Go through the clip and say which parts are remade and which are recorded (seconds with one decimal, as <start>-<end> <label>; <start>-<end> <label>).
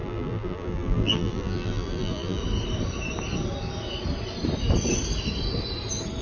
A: 0.0-2.4 remade; 2.4-6.2 recorded